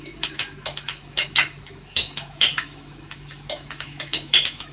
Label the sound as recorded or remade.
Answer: remade